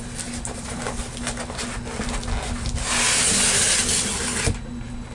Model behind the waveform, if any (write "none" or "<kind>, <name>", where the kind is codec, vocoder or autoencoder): none